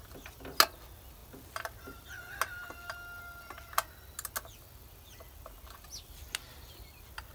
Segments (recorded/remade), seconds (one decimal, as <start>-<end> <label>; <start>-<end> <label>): 0.0-7.3 recorded

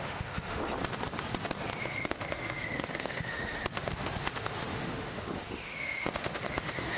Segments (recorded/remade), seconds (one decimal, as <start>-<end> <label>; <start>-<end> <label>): 0.0-0.6 remade; 0.6-1.8 recorded; 1.8-3.6 remade; 3.6-4.2 recorded; 4.2-7.0 remade

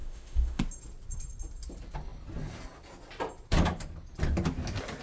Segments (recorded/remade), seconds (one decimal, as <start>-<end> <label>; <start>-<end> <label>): 0.0-0.6 remade; 0.6-5.0 recorded